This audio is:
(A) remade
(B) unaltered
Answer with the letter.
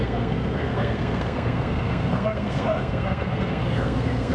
A